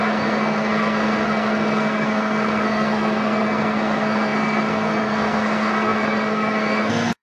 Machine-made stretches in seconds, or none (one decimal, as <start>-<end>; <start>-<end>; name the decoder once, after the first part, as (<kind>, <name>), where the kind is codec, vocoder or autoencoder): 0.0-7.2 (codec, SNAC)